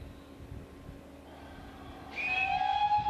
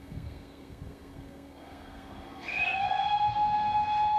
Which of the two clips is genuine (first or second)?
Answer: first